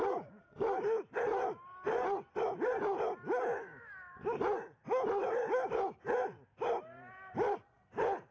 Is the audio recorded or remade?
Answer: recorded